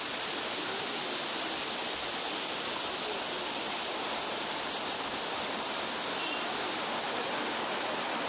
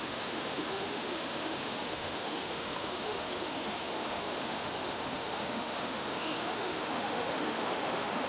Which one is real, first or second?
first